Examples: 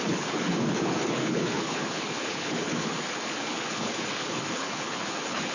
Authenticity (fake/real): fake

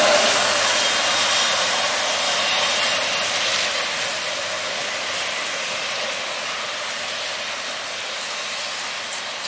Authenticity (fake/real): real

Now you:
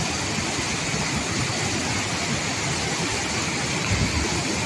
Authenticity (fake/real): real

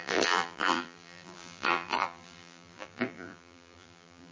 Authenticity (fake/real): fake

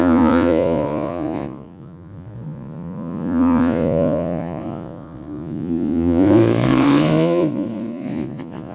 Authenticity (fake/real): fake